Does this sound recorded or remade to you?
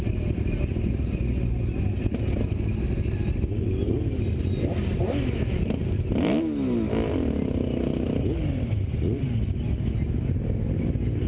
recorded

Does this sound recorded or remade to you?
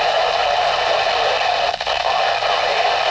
recorded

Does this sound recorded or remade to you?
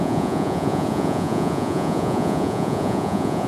remade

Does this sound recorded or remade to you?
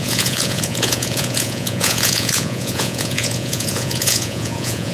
remade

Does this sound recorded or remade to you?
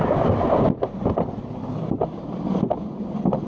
remade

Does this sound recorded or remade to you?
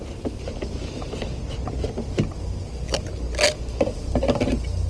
recorded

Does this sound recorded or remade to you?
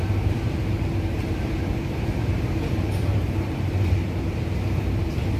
remade